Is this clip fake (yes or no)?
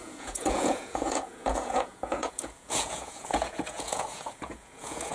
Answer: yes